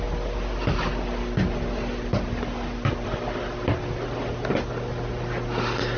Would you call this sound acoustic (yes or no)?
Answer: yes